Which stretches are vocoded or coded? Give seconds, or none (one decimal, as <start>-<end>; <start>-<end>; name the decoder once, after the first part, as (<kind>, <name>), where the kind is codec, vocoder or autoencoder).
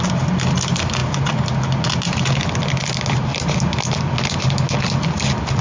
none